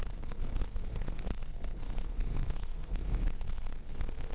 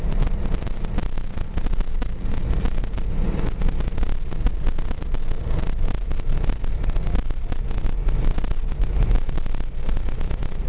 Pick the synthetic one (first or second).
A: first